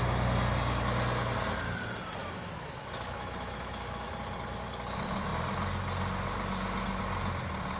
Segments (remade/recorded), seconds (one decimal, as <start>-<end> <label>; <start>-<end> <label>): 0.0-2.2 recorded; 2.2-4.1 remade; 4.1-7.8 recorded